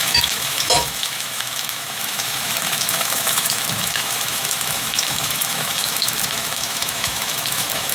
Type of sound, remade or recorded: remade